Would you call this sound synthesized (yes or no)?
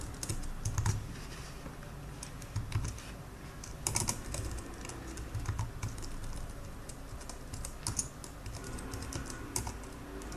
no